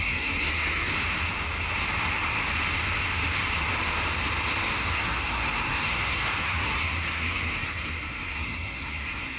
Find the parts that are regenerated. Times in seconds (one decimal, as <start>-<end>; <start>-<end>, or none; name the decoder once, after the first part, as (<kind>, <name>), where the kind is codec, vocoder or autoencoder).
0.0-0.9 (codec, SNAC); 4.9-9.4